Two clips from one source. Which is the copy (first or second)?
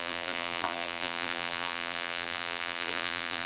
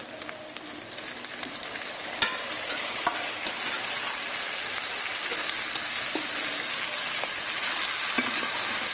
first